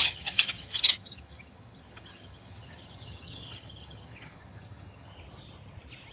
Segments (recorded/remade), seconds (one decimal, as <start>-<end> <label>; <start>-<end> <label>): 0.0-5.1 remade; 5.1-6.1 recorded